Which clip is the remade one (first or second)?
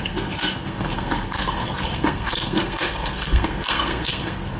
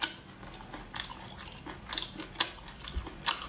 first